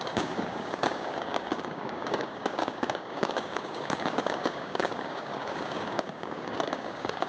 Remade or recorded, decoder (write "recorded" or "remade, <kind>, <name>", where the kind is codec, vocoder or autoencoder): remade, codec, DAC